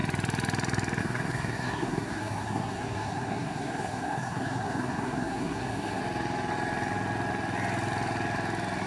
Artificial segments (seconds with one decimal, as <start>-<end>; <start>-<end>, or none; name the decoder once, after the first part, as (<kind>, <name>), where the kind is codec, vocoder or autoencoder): 1.0-6.0 (codec, SNAC)